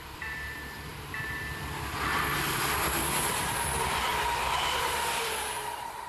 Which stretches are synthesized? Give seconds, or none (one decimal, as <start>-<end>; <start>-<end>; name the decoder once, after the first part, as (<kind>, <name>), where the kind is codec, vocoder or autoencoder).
0.0-4.1 (vocoder, BigVGAN v2); 4.8-6.1